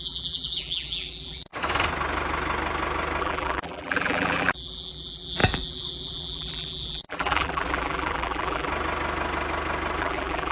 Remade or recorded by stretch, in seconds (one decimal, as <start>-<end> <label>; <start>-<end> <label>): 0.0-1.5 remade; 1.5-3.2 recorded; 3.2-8.7 remade; 8.7-10.0 recorded; 10.0-10.5 remade